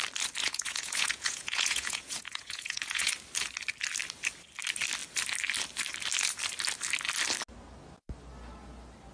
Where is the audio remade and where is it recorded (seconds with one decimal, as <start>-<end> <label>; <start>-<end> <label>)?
0.0-0.4 recorded; 0.4-3.1 remade; 3.1-9.1 recorded